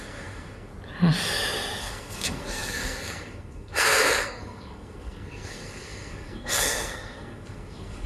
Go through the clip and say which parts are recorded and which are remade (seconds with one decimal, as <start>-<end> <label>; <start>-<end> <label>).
0.0-0.7 remade; 0.7-1.8 recorded; 1.8-8.1 remade